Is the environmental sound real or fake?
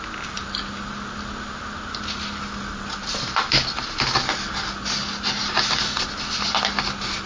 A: real